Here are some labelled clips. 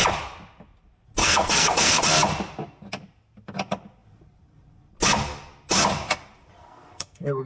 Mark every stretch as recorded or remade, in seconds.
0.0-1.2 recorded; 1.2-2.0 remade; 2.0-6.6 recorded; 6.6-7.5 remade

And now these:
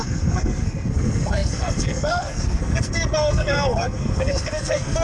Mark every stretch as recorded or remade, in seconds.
0.0-5.0 remade

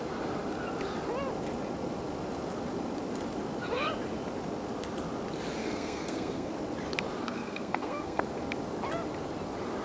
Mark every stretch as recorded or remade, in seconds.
0.0-5.6 recorded; 5.6-6.5 remade; 6.5-7.2 recorded; 7.2-8.2 remade; 8.2-9.8 recorded

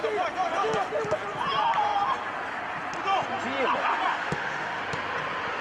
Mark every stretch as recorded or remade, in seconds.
0.0-4.1 recorded; 4.1-4.8 remade; 4.8-5.6 recorded

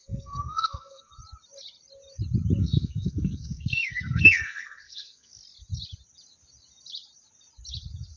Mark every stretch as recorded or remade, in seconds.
0.0-1.1 remade; 1.1-2.6 recorded; 2.6-5.3 remade; 5.3-8.2 recorded

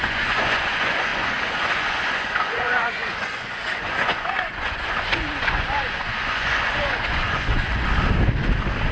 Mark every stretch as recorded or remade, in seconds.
0.0-7.9 remade; 7.9-8.9 recorded

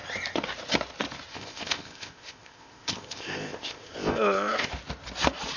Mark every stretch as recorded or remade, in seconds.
0.0-1.3 recorded; 1.3-4.7 remade; 4.7-5.6 recorded

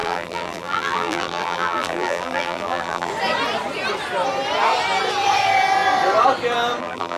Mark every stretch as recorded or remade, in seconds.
0.0-3.1 remade; 3.1-6.8 recorded; 6.8-7.2 remade